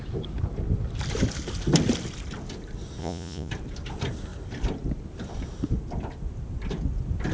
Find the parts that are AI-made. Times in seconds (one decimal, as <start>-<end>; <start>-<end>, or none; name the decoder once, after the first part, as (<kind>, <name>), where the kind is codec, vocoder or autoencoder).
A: 3.0-3.5 (vocoder, Vocos)